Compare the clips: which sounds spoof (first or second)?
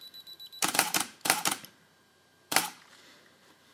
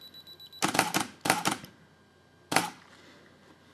first